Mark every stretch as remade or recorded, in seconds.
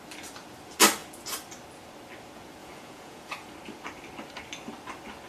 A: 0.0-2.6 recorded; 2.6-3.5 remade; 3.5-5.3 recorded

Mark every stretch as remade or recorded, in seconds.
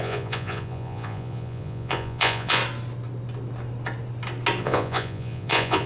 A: 0.0-2.6 remade; 2.6-4.6 recorded; 4.6-5.9 remade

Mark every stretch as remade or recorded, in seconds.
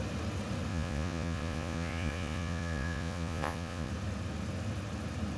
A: 0.0-0.7 recorded; 0.7-3.9 remade; 3.9-5.4 recorded